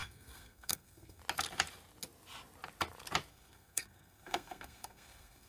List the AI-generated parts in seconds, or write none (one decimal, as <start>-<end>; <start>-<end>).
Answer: 0.0-1.2; 3.3-5.5